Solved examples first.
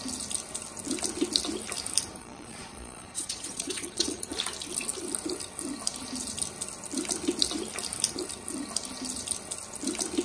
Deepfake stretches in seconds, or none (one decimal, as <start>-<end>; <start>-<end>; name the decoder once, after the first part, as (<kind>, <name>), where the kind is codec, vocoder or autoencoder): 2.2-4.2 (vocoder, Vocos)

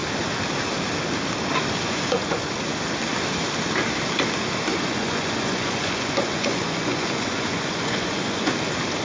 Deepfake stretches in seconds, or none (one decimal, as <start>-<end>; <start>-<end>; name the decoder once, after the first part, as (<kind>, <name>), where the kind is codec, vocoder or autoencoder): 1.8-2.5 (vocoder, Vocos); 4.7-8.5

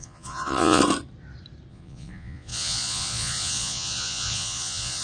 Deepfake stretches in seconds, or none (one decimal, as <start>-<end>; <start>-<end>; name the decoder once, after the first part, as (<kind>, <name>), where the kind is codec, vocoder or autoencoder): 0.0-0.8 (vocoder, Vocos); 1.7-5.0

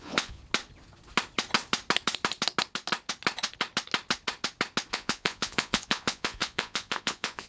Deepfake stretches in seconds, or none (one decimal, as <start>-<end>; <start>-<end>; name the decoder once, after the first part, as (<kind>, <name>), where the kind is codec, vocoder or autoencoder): 0.0-0.4 (vocoder, Vocos); 4.9-7.5